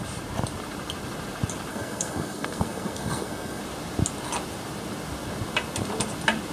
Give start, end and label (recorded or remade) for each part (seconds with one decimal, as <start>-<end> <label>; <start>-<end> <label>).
0.0-1.7 recorded; 1.7-3.6 remade; 3.6-6.5 recorded